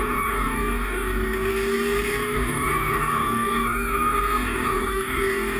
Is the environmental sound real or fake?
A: fake